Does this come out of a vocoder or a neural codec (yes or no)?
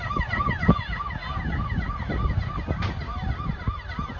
no